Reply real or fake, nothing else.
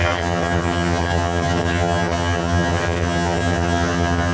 fake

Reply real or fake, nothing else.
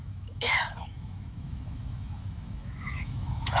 fake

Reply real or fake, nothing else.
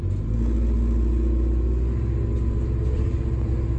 real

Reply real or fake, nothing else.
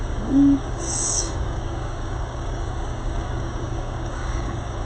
fake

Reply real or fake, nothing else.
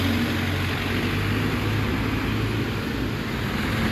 real